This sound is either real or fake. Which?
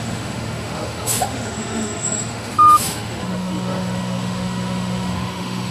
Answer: fake